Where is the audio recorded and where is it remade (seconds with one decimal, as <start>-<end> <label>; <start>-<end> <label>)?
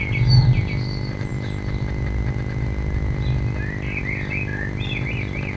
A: 0.0-4.5 recorded; 4.5-5.6 remade